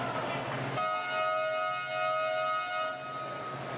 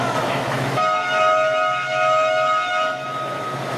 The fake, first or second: second